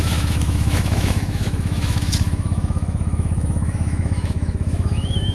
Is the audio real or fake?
fake